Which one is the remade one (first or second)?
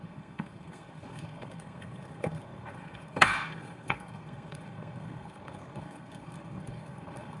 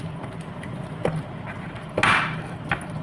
first